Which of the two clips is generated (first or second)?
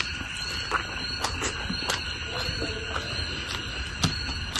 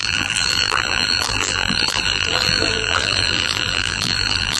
second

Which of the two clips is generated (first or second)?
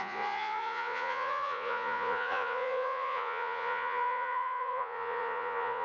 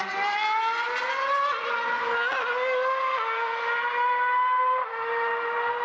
first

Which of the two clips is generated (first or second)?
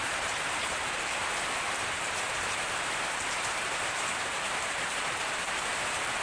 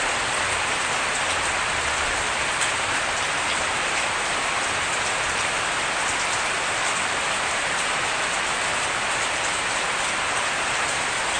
first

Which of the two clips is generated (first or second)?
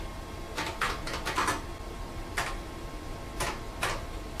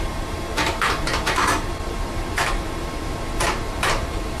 second